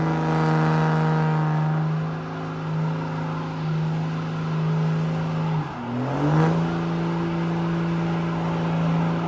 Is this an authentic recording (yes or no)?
yes